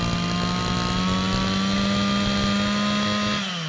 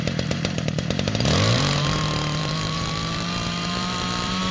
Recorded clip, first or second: first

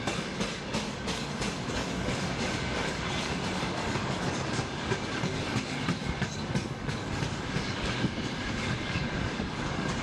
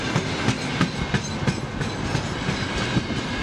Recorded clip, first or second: second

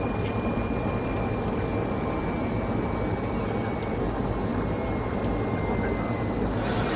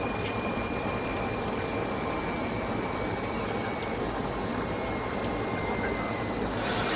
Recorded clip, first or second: first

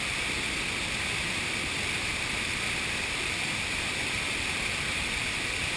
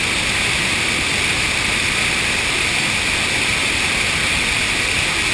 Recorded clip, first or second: second